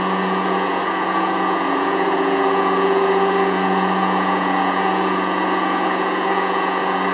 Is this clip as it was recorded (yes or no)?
no